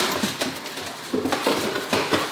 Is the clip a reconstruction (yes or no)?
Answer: no